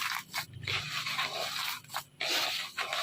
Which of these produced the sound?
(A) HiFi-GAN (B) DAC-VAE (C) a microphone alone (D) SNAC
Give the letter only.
C